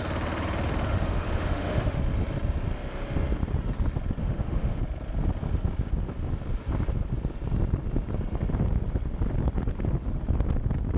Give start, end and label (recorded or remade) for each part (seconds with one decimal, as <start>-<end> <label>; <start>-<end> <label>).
0.0-0.9 recorded; 0.9-2.0 remade; 2.0-4.2 recorded; 4.2-4.8 remade; 4.8-11.0 recorded